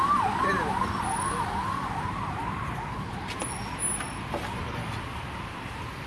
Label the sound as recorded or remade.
recorded